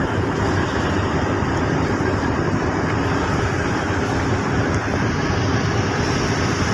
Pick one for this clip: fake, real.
real